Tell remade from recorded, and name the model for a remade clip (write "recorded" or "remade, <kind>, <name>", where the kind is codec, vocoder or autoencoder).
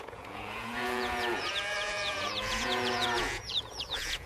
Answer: remade, vocoder, Vocos